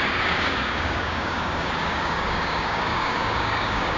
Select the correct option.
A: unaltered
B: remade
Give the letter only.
B